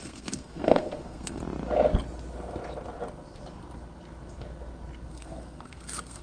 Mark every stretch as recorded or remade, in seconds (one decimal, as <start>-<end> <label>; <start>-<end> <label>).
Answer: 0.0-1.4 remade; 1.4-5.1 recorded; 5.1-6.2 remade